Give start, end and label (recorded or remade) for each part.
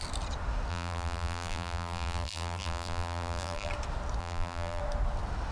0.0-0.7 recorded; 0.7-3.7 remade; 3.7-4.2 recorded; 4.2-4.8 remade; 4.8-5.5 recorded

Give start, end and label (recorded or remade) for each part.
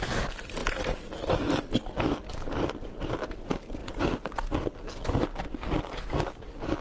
0.0-0.6 remade; 0.6-2.3 recorded; 2.3-3.8 remade; 3.8-6.0 recorded; 6.0-6.8 remade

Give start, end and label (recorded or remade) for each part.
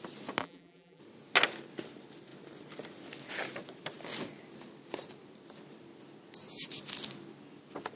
0.0-0.4 recorded; 0.4-1.0 remade; 1.0-8.0 recorded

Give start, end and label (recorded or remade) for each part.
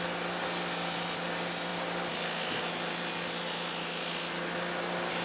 0.0-5.2 recorded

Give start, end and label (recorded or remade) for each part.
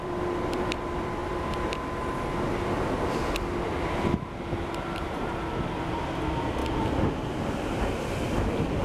0.0-1.2 remade; 1.2-4.4 recorded; 4.4-6.6 remade; 6.6-7.4 recorded; 7.4-8.8 remade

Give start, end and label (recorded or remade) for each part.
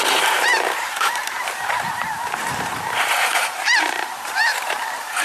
0.0-5.2 remade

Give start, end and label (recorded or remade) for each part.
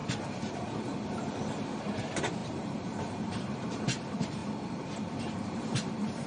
0.0-1.8 recorded; 1.8-4.4 remade; 4.4-5.4 recorded; 5.4-6.3 remade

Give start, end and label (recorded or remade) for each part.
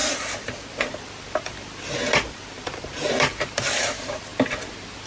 0.0-4.3 remade; 4.3-5.1 recorded